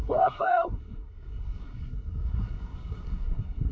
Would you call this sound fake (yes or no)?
yes